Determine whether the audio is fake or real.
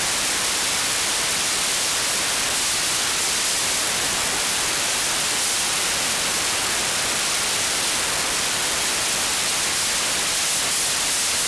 real